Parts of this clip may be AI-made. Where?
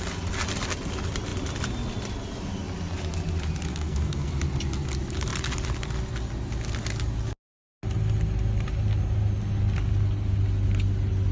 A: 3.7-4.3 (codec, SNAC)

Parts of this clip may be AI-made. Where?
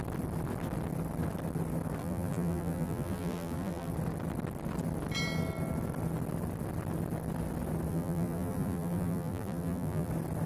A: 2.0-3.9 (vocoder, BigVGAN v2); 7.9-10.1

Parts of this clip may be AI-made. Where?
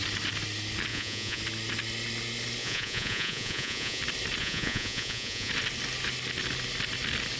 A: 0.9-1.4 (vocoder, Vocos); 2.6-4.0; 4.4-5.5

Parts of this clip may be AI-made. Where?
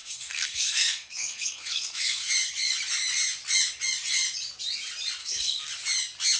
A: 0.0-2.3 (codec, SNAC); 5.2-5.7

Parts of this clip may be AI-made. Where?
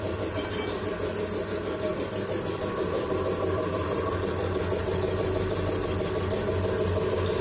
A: 1.9-4.8 (vocoder, BigVGAN v2)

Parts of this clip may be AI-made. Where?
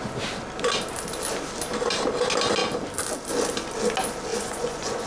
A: 4.3-5.1 (vocoder, Vocos)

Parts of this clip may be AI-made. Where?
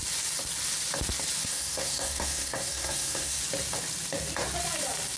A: 1.4-3.4 (codec, SNAC)